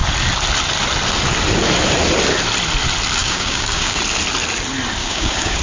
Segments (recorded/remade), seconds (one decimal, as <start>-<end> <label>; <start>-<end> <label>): 0.0-3.2 recorded; 3.2-4.0 remade; 4.0-5.0 recorded; 5.0-5.6 remade